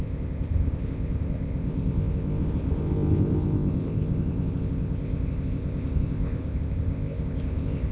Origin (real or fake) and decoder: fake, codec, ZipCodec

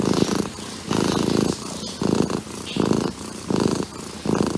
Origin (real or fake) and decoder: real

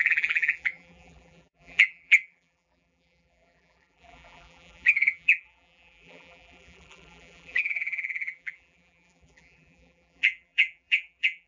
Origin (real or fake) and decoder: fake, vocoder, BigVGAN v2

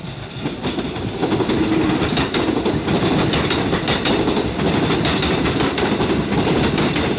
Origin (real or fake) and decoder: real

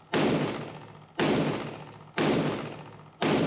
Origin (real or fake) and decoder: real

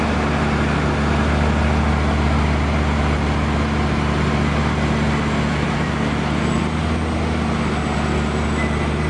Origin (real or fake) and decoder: real